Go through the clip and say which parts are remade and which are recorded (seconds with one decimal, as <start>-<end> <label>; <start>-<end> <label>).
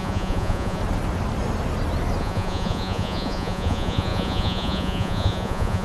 0.0-0.8 remade; 0.8-2.2 recorded; 2.2-5.8 remade